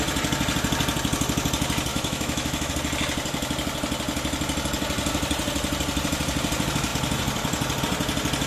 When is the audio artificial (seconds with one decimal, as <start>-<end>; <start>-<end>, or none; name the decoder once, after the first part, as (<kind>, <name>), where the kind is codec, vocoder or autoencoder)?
1.9-2.7 (autoencoder, DAC-VAE)